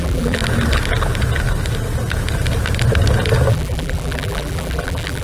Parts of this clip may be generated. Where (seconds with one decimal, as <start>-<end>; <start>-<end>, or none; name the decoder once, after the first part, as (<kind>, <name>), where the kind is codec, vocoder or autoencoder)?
0.0-0.4 (vocoder, BigVGAN v2); 3.5-5.2